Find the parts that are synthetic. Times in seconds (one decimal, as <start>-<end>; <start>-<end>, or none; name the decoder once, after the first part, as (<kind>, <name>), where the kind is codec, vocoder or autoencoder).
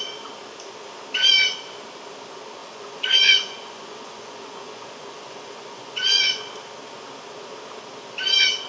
2.6-6.5 (vocoder, Vocos)